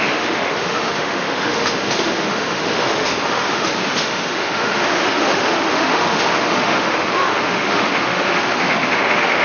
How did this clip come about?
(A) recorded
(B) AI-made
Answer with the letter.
B